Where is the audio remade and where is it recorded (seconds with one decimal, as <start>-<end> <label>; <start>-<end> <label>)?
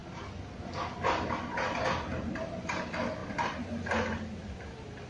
0.0-5.1 recorded